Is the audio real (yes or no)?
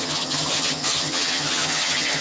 no